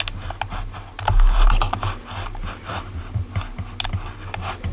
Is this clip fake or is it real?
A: real